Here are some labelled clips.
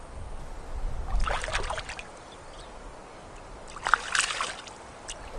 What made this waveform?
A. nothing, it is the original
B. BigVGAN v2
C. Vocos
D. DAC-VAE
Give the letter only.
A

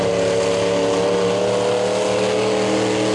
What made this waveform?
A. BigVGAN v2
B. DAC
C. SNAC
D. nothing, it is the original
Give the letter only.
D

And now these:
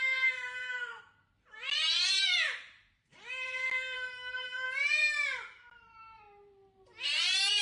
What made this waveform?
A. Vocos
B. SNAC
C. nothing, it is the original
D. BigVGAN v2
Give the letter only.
D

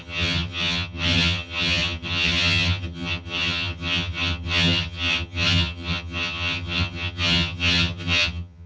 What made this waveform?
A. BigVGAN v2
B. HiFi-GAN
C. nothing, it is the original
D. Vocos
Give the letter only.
B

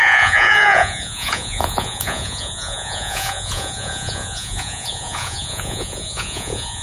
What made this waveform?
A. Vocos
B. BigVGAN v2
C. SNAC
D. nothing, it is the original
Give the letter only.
A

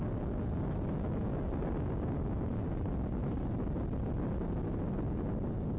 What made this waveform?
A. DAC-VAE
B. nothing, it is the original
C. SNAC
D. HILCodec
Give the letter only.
B